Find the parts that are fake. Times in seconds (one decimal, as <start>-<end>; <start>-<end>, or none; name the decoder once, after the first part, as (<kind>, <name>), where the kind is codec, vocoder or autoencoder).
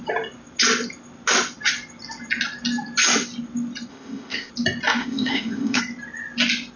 3.9-4.5 (codec, ZipCodec); 5.0-5.8